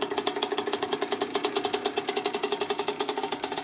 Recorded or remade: remade